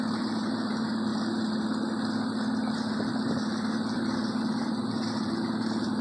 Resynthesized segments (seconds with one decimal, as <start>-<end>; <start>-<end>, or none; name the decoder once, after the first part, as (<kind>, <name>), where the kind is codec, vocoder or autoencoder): 0.0-1.1 (vocoder, BigVGAN v2); 3.1-6.0